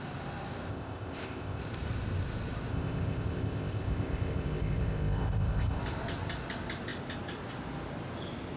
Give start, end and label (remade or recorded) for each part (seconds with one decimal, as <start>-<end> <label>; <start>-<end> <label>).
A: 0.0-0.7 recorded; 0.7-1.6 remade; 1.6-2.7 recorded; 2.7-5.8 remade; 5.8-8.6 recorded